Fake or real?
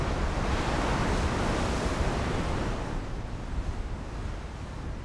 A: real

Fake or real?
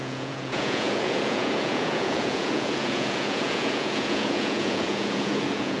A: fake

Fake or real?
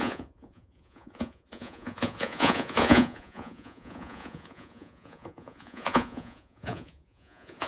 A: fake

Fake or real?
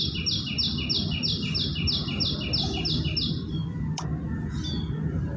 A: real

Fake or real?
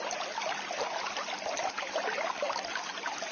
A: real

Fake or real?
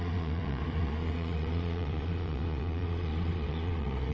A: fake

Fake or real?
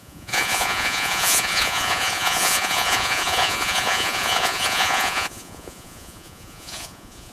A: fake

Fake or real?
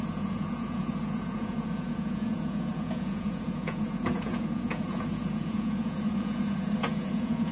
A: fake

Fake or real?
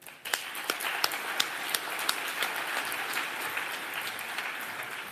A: real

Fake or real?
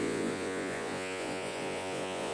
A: fake